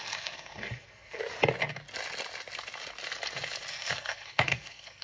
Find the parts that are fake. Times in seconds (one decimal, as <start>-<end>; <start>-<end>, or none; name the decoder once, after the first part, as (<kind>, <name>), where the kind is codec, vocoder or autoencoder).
0.0-1.2 (codec, SNAC); 3.7-5.0